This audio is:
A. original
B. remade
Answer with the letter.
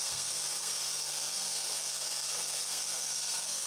B